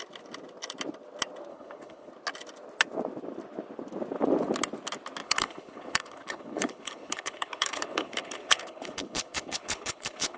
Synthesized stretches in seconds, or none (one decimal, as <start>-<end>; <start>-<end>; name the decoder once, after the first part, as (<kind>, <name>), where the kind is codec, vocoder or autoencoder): 1.5-2.1 (codec, HILCodec); 5.2-10.4